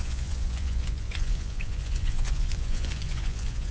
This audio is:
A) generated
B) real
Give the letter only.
A